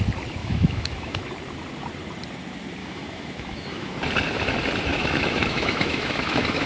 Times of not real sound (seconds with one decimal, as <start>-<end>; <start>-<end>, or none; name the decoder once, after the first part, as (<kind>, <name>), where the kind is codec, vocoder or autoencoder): 0.4-1.2 (autoencoder, DAC-VAE); 2.8-3.9; 4.9-6.7